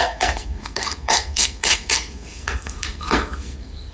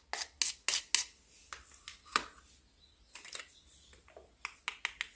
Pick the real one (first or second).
second